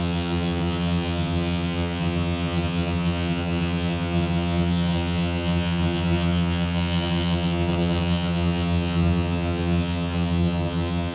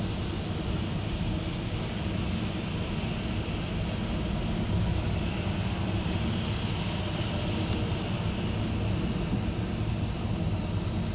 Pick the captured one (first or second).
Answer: second